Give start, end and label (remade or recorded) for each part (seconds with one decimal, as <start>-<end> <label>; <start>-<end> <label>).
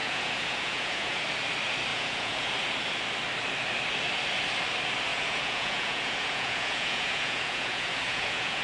0.0-1.2 remade; 1.2-1.9 recorded; 1.9-2.5 remade; 2.5-5.1 recorded; 5.1-8.6 remade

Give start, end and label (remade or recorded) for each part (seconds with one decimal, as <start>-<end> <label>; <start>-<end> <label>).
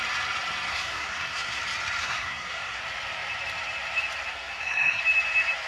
0.0-0.7 recorded; 0.7-1.6 remade; 1.6-2.0 recorded; 2.0-2.8 remade; 2.8-4.3 recorded; 4.3-5.0 remade; 5.0-5.7 recorded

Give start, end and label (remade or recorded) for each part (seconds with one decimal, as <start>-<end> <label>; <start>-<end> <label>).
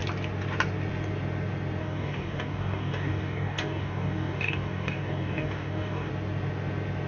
0.0-1.8 recorded; 1.8-6.1 remade; 6.1-7.1 recorded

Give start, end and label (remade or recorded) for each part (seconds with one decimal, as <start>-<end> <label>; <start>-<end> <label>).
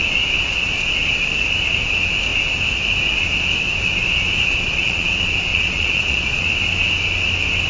0.0-4.5 recorded; 4.5-5.1 remade; 5.1-5.5 recorded; 5.5-6.6 remade; 6.6-7.7 recorded